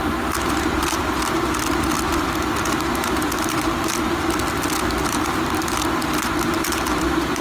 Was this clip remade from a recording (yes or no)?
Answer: no